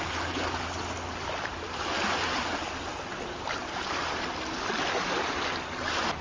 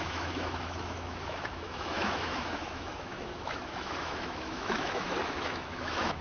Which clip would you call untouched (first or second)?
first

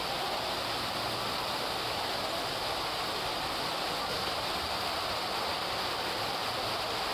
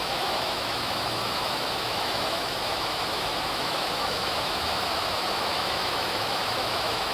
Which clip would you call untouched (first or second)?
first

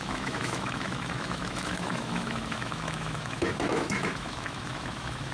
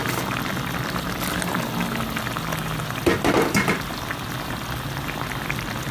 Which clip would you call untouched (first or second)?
second